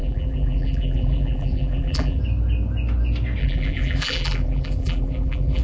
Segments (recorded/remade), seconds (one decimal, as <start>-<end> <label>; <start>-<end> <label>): 0.0-2.2 remade; 2.2-3.4 recorded; 3.4-5.6 remade